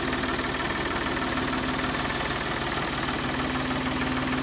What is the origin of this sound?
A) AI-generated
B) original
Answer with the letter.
B